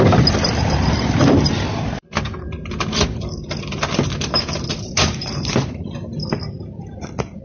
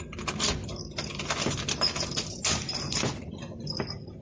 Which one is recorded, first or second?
second